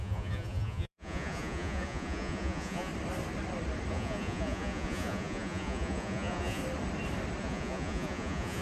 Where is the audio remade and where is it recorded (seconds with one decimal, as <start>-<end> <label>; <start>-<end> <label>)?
0.0-2.9 remade; 2.9-3.9 recorded; 3.9-6.6 remade; 6.6-7.4 recorded; 7.4-8.6 remade